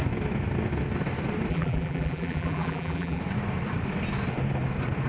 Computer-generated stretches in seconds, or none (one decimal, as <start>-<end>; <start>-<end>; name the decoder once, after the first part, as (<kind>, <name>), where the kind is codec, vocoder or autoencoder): 1.5-3.2 (vocoder, BigVGAN v2)